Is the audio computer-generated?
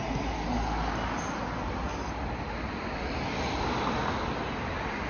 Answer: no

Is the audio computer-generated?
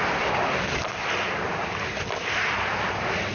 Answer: no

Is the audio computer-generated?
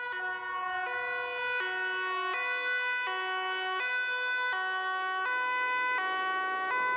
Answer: no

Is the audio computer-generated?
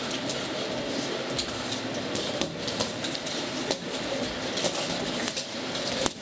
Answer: no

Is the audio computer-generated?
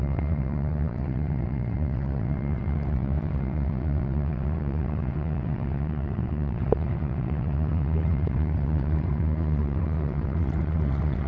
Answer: yes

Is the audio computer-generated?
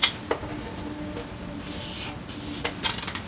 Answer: no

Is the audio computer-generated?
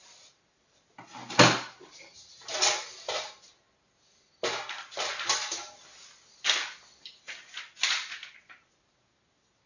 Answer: no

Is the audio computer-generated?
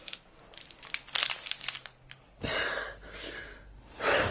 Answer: no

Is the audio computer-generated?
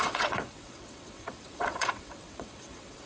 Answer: yes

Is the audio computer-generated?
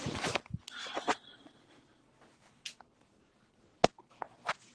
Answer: no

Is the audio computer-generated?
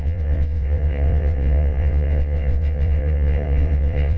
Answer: yes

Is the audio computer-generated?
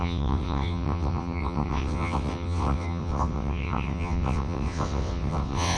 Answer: yes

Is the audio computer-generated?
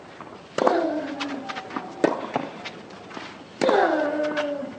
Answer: no